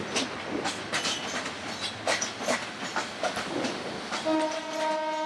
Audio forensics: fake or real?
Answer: real